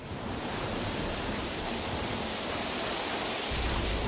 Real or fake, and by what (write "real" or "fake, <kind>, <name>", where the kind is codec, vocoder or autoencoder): real